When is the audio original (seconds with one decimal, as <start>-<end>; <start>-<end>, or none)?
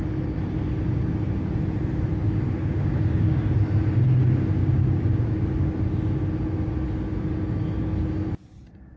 0.0-2.6; 3.5-4.6; 5.4-9.0